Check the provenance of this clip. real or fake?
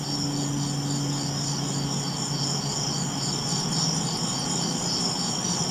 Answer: real